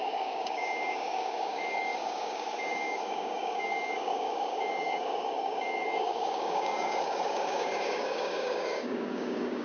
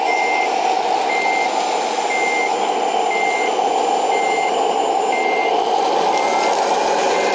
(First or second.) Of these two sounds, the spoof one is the first